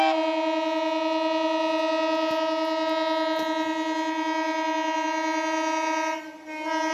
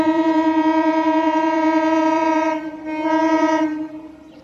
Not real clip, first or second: second